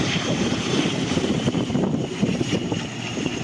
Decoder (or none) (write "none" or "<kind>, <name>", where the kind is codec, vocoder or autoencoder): vocoder, BigVGAN v2